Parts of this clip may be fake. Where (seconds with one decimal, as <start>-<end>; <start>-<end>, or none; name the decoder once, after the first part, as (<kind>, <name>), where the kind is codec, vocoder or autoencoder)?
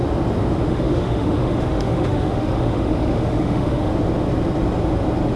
0.7-3.9 (autoencoder, DAC-VAE)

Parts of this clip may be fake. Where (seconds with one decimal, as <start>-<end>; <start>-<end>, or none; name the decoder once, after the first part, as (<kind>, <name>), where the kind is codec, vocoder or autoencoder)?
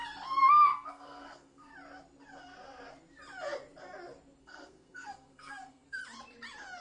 0.5-1.7 (codec, SNAC); 4.4-6.0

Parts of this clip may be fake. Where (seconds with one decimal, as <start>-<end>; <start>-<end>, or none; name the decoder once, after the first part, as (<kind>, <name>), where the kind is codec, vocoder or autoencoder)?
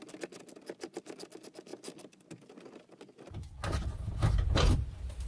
none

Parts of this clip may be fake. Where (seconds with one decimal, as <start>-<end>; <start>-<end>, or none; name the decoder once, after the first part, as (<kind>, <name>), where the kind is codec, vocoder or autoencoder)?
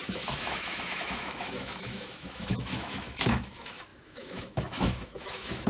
0.0-5.7 (autoencoder, DAC-VAE)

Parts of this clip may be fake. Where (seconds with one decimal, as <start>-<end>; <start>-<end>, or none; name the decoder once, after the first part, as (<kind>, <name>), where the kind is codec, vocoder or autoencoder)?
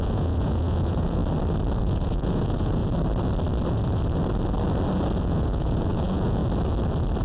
0.0-1.2 (vocoder, Vocos); 1.8-2.8; 5.2-6.4